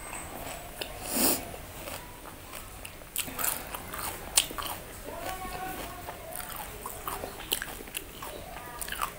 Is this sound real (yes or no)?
yes